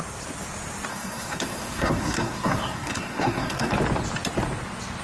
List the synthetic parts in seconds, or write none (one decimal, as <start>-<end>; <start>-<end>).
0.9-3.7